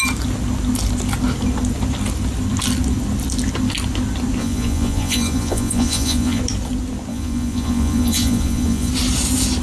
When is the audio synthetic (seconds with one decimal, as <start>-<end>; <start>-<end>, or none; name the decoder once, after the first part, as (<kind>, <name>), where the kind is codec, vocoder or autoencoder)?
4.4-6.4 (vocoder, Vocos); 7.1-8.9